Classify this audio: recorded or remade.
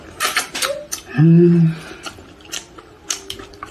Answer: recorded